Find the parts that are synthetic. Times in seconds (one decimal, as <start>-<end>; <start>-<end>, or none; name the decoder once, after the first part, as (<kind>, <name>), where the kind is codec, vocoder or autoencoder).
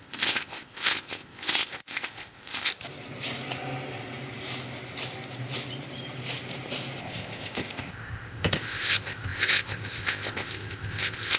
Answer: 0.0-2.7 (codec, ZipCodec); 7.0-11.4